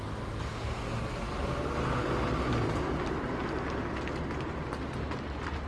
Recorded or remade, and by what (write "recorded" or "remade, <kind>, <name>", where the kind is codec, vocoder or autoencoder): recorded